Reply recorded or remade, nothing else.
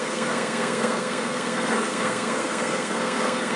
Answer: remade